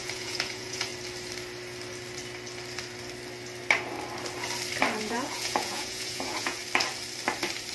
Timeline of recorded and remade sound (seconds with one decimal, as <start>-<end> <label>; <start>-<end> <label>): 0.0-0.9 remade; 0.9-5.0 recorded; 5.0-6.6 remade; 6.6-7.7 recorded